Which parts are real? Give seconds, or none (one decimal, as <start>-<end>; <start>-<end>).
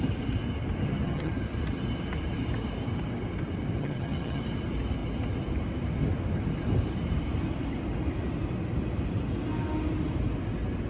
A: 0.0-0.8; 1.3-3.8; 4.4-10.9